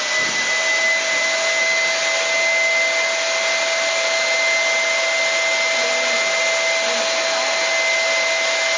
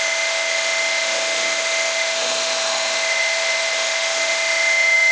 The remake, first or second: second